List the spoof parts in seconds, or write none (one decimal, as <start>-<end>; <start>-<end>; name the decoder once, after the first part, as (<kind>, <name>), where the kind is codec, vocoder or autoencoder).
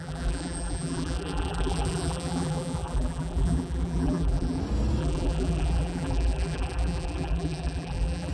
0.0-4.6 (vocoder, BigVGAN v2); 5.0-8.3